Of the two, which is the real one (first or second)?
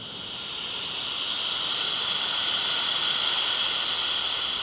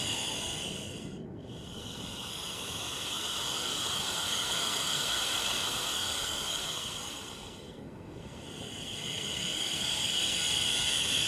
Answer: first